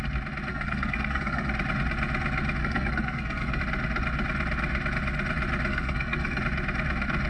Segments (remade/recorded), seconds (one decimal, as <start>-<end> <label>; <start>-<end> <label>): 0.0-0.5 recorded; 0.5-1.5 remade; 1.5-2.6 recorded; 2.6-3.6 remade; 3.6-5.7 recorded; 5.7-6.4 remade; 6.4-7.3 recorded